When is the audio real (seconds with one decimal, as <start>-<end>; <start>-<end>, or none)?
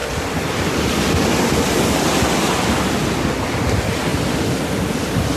0.0-5.4